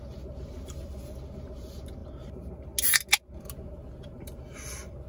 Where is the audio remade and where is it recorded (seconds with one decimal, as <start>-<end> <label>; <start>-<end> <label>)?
0.0-5.1 recorded